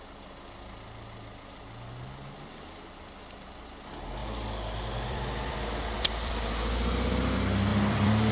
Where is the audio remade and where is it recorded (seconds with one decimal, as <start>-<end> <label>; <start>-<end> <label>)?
0.0-4.2 recorded; 4.2-6.3 remade; 6.3-7.7 recorded; 7.7-8.3 remade